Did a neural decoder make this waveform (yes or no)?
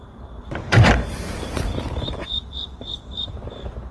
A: yes